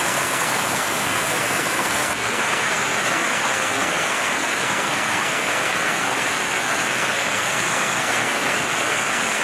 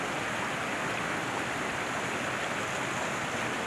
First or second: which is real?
second